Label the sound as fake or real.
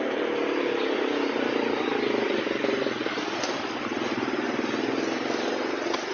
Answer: fake